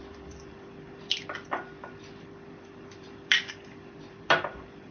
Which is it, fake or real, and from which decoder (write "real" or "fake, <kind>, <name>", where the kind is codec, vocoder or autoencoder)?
fake, vocoder, BigVGAN v2